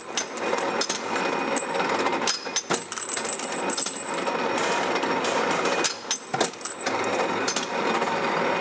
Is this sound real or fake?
real